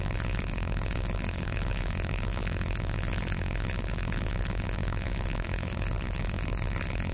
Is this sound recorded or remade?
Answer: remade